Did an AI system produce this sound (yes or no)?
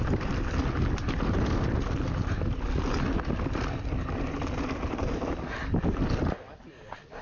no